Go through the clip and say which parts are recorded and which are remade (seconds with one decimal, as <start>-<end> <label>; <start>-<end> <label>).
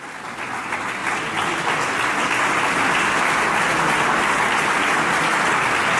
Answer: 0.0-6.0 recorded